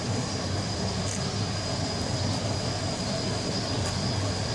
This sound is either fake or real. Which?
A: real